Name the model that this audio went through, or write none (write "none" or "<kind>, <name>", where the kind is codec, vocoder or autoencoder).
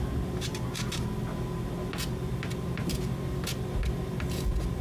none